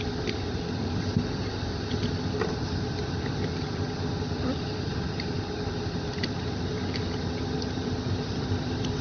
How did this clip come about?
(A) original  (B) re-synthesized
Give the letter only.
A